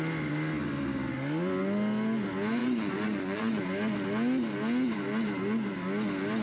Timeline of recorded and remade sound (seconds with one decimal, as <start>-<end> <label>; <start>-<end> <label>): 0.0-2.6 recorded; 2.6-3.6 remade; 3.6-6.4 recorded